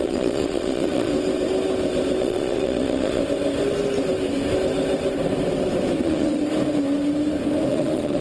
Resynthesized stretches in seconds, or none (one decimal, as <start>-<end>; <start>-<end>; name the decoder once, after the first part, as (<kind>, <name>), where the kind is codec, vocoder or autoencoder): 0.0-1.1 (vocoder, Vocos); 2.2-3.2; 6.0-6.4; 7.7-8.2

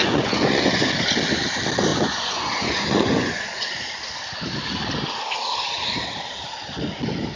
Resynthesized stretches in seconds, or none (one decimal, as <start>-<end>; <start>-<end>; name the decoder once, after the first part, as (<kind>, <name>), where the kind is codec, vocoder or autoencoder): 0.0-0.8 (vocoder, Vocos); 1.9-3.7

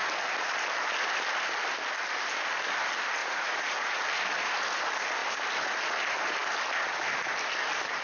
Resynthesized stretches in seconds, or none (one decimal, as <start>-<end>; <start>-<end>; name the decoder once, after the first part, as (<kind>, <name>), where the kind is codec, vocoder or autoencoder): 3.2-4.0 (vocoder, Vocos)

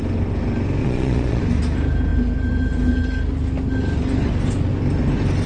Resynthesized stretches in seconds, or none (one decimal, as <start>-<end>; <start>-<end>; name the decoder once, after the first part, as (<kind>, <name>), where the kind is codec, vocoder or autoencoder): 0.8-1.4 (vocoder, Vocos)